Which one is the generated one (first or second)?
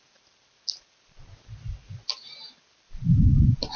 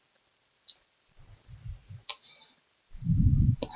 second